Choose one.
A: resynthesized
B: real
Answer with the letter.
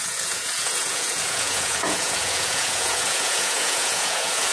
A